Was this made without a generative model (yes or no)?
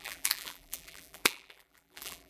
no